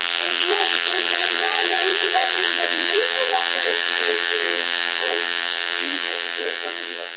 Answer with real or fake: fake